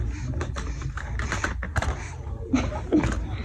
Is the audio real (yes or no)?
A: no